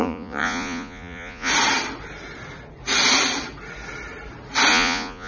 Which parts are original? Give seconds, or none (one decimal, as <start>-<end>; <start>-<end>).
1.5-4.7